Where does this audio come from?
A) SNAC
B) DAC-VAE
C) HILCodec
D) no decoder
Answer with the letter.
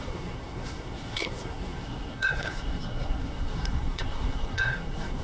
A